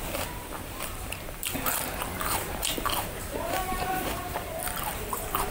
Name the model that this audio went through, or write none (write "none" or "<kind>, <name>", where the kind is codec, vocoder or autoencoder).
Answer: vocoder, BigVGAN v2